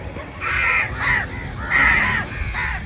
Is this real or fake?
real